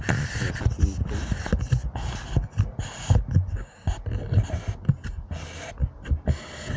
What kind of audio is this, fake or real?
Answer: real